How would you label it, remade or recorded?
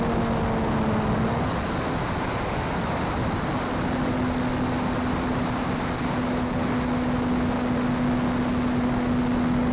recorded